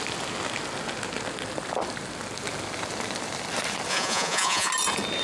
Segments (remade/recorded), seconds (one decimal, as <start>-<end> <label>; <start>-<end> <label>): 0.0-3.9 recorded; 3.9-4.7 remade; 4.7-5.2 recorded